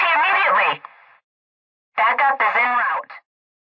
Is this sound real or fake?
real